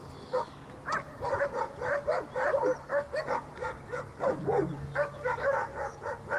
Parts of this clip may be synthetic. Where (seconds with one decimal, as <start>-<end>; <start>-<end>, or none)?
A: 0.0-0.6; 2.9-6.4